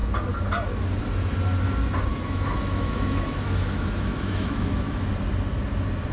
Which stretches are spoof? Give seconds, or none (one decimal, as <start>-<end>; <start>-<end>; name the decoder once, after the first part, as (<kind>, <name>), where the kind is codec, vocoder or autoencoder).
2.1-5.1 (autoencoder, DAC-VAE)